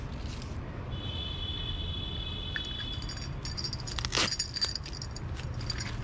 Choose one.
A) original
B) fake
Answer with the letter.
A